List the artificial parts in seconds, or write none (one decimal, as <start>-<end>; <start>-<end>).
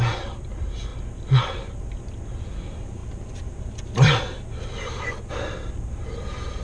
none